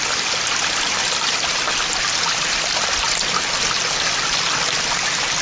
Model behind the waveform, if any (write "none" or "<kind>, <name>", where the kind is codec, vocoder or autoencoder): none